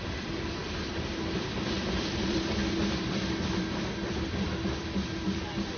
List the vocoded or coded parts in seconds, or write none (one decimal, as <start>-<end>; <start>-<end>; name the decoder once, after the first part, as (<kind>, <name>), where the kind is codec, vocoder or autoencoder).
0.0-5.8 (vocoder, BigVGAN v2)